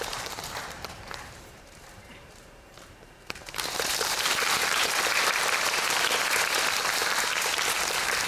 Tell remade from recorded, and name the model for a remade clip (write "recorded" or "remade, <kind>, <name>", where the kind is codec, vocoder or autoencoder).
remade, vocoder, BigVGAN v2